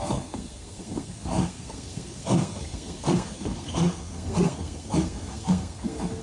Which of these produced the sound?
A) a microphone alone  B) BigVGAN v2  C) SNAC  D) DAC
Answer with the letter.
C